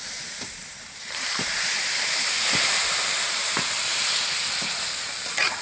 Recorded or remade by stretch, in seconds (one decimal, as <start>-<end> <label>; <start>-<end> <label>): 0.0-1.7 remade; 1.7-2.6 recorded; 2.6-3.9 remade; 3.9-4.6 recorded; 4.6-5.6 remade